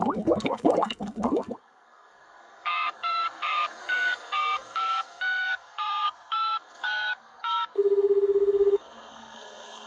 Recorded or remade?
remade